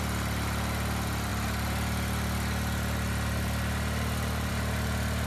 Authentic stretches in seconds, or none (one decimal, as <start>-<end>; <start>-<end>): 0.0-5.3